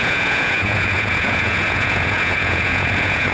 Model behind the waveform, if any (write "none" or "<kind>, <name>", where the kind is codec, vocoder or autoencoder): vocoder, Vocos